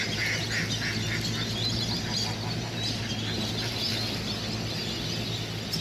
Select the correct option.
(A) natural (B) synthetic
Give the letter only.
A